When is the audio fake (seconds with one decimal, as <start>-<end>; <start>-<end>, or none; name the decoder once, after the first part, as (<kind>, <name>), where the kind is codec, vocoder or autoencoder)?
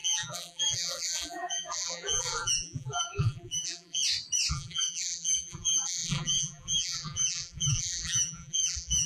0.0-4.0 (vocoder, BigVGAN v2); 4.5-9.1